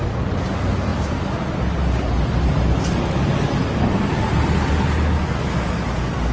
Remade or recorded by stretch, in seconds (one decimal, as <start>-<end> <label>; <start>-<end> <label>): 0.0-6.3 recorded